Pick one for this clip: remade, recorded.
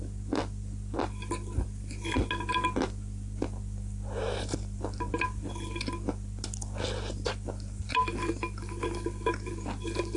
recorded